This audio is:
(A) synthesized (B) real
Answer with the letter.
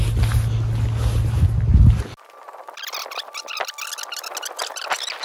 B